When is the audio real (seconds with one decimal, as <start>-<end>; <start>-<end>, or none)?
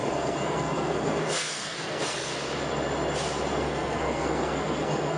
2.3-3.6